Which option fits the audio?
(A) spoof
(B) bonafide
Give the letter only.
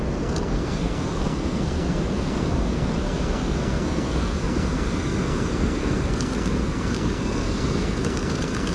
A